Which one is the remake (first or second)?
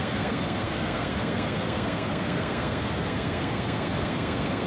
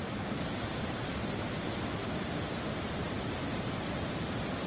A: first